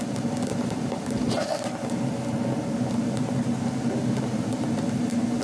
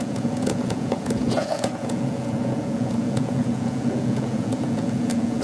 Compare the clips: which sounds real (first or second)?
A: first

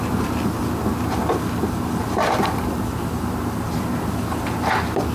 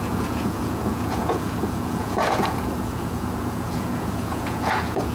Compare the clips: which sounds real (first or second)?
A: first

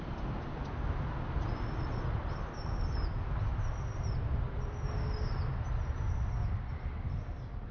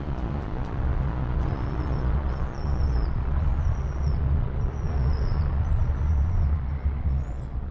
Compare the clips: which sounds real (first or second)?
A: first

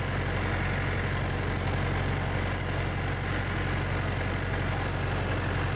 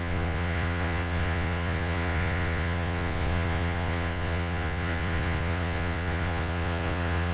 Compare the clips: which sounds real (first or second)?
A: first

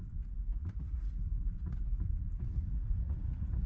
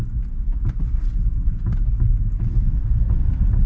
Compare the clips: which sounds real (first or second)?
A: second